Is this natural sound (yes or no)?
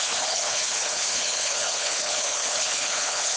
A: no